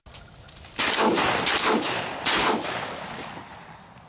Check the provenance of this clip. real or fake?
real